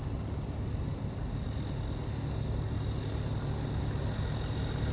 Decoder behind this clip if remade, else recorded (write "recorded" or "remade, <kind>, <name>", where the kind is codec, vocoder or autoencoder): recorded